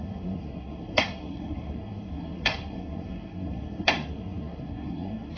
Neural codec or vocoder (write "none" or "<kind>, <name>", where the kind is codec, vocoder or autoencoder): codec, SNAC